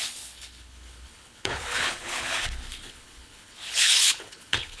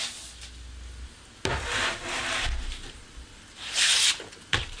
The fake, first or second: first